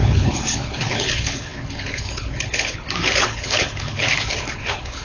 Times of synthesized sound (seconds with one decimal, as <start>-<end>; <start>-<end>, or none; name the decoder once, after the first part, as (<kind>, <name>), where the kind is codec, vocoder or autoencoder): 0.0-5.0 (codec, HILCodec)